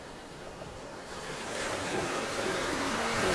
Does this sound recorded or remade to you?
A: remade